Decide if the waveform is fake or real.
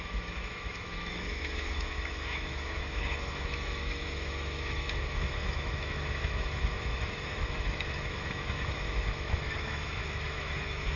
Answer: fake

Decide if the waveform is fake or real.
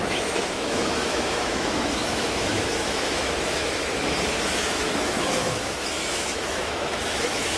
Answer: fake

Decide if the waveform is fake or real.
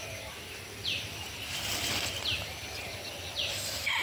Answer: real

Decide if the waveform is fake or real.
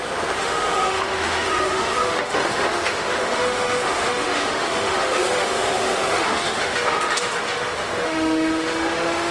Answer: fake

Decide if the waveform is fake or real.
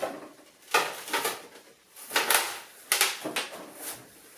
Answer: real